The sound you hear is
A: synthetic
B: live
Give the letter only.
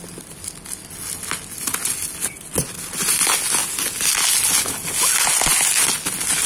B